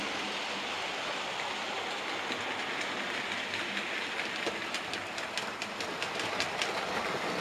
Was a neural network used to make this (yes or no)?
no